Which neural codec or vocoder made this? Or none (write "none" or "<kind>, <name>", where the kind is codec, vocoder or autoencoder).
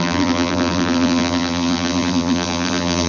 vocoder, BigVGAN v2